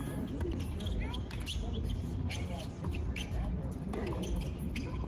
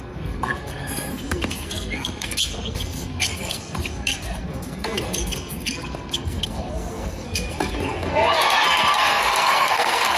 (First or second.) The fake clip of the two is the second